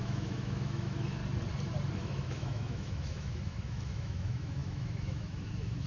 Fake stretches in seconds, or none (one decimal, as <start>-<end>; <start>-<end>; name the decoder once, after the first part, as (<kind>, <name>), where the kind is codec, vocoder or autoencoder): 0.0-1.2 (autoencoder, DAC-VAE); 2.0-5.9